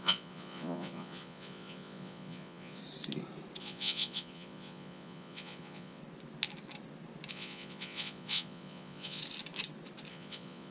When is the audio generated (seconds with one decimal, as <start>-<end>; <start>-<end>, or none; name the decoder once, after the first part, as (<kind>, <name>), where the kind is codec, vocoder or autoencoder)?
0.0-2.8 (vocoder, Vocos); 3.6-6.0; 7.3-9.2; 10.1-10.7